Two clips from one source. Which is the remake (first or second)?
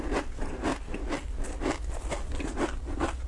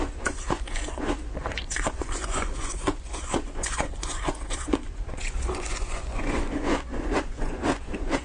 second